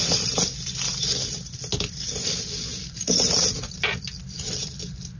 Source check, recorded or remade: recorded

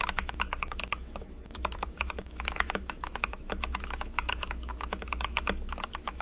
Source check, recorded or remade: remade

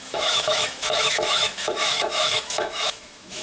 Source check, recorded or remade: remade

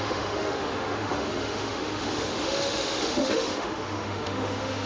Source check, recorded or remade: remade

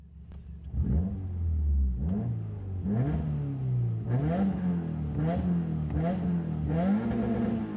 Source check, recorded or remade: recorded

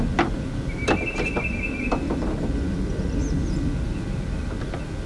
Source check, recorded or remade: recorded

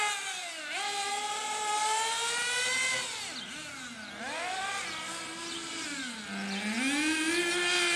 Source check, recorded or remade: recorded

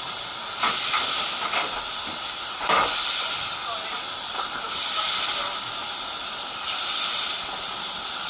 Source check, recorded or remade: recorded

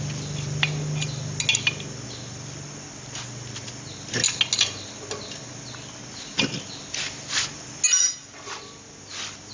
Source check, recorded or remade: recorded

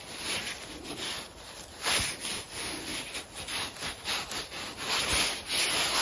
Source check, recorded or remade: recorded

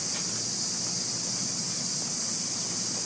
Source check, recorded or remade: recorded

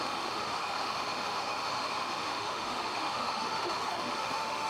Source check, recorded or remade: remade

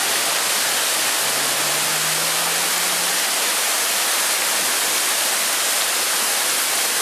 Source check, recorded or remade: recorded